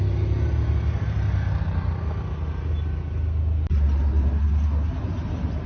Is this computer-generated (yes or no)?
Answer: no